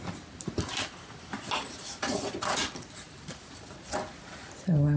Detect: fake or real real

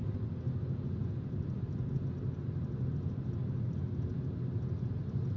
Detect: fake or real real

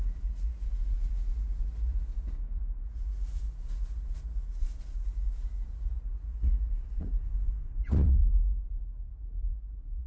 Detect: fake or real fake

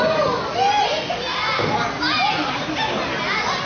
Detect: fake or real real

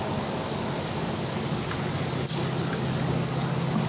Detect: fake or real fake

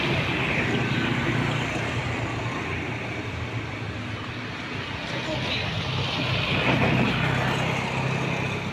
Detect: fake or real real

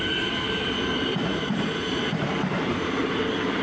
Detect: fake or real fake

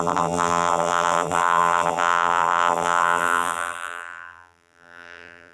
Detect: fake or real fake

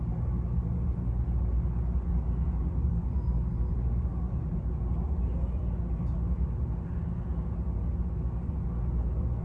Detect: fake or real real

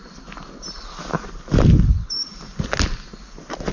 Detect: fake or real real